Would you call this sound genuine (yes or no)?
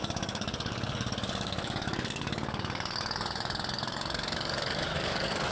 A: no